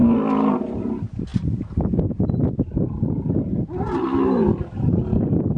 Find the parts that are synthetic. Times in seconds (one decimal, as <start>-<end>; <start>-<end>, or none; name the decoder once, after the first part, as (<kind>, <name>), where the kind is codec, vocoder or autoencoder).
none